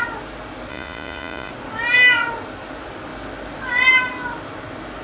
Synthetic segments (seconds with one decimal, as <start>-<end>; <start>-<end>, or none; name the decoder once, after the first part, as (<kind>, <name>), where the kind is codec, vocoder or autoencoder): 0.7-1.5 (vocoder, Vocos)